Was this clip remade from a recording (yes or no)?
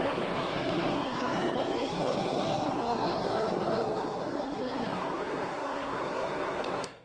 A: yes